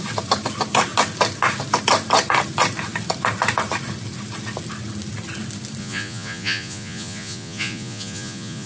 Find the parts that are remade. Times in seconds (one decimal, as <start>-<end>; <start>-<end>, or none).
5.8-8.7